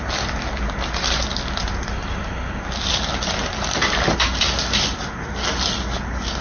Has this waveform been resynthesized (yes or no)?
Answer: no